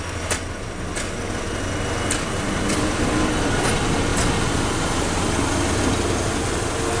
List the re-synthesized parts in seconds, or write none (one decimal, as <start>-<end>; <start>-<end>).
none